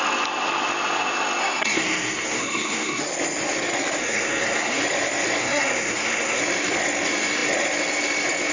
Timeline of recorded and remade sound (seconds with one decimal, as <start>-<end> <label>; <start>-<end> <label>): 0.0-1.4 recorded; 1.4-3.0 remade; 3.0-4.0 recorded; 4.0-4.8 remade; 4.8-5.4 recorded; 5.4-6.4 remade; 6.4-8.5 recorded